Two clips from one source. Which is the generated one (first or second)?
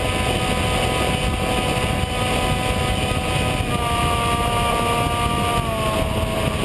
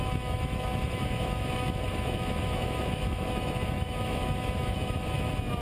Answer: second